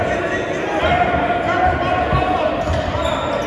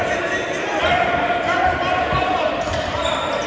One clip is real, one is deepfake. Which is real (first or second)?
first